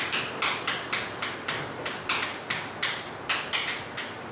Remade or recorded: recorded